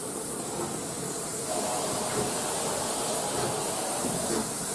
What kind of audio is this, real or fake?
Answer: real